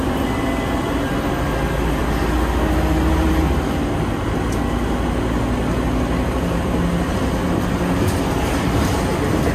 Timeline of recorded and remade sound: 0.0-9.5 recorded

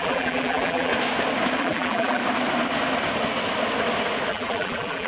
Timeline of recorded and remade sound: 0.0-0.9 remade; 0.9-1.6 recorded; 1.6-2.2 remade; 2.2-4.3 recorded; 4.3-5.1 remade

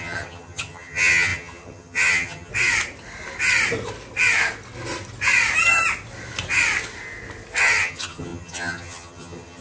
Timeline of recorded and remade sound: 0.0-2.5 remade; 2.5-7.6 recorded; 7.6-9.6 remade

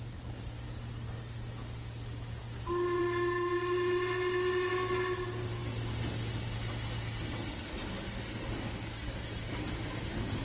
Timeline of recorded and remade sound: 0.0-10.4 recorded

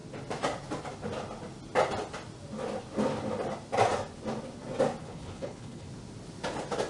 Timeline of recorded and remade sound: 0.0-5.0 recorded; 5.0-5.9 remade; 5.9-6.9 recorded

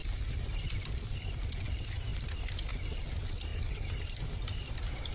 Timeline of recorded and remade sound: 0.0-5.1 recorded

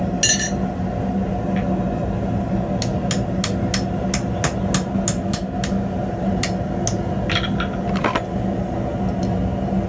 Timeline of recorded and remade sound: 0.0-9.9 recorded

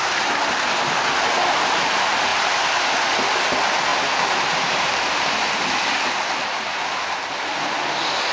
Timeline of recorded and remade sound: 0.0-3.9 recorded; 3.9-5.1 remade; 5.1-6.7 recorded; 6.7-7.2 remade; 7.2-8.3 recorded